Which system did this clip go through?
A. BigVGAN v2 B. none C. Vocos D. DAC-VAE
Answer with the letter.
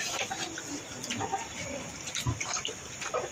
A